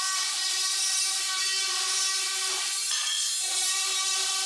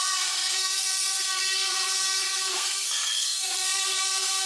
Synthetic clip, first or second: second